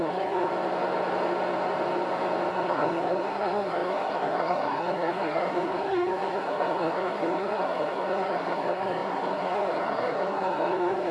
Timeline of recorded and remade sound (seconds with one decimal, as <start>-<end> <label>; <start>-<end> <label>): 0.0-0.5 remade; 0.5-2.5 recorded; 2.5-11.1 remade